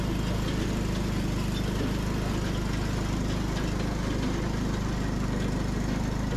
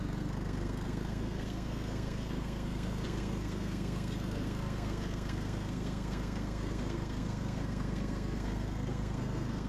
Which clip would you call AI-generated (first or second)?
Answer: second